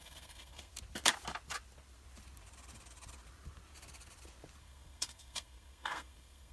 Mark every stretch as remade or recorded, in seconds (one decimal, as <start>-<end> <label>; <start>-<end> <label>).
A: 0.0-0.7 remade; 0.7-4.6 recorded; 4.6-6.5 remade